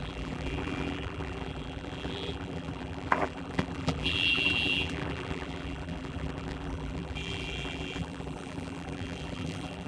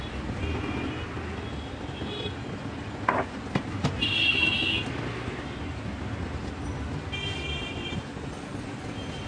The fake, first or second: first